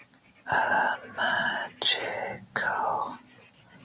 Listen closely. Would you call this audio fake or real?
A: real